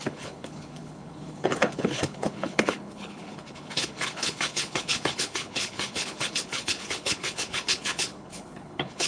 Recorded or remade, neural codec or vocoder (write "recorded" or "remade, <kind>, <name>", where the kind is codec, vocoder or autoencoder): remade, codec, HILCodec